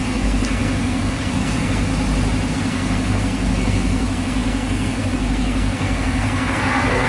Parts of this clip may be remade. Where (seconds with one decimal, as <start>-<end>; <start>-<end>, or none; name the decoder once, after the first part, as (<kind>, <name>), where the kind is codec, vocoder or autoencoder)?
0.0-1.9 (codec, SNAC); 2.5-7.1